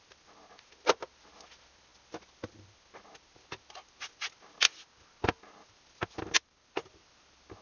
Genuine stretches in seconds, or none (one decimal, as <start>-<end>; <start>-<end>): 0.0-7.6